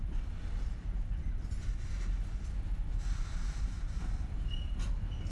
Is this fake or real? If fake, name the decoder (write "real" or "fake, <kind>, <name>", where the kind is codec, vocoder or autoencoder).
real